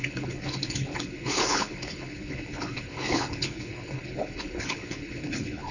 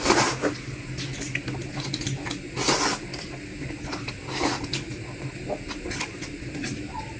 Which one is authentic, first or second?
second